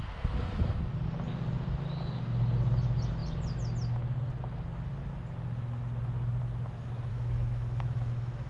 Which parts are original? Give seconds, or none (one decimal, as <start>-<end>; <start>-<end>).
0.0-7.1